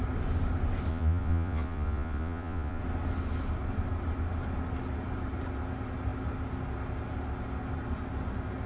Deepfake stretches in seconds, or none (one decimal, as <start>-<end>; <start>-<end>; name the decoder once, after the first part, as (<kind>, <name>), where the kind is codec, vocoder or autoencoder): 0.9-2.8 (vocoder, Vocos)